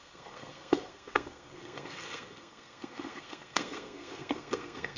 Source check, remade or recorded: remade